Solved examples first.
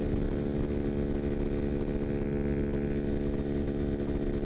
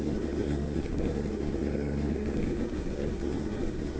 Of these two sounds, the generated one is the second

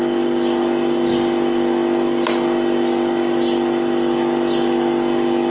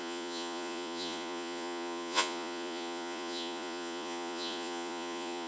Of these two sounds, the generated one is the second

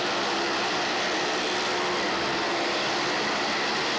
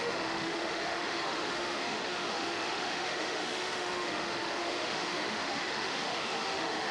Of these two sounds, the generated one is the second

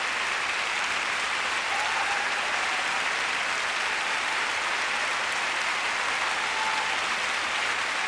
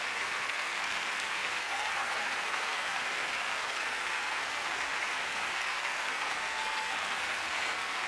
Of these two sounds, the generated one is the second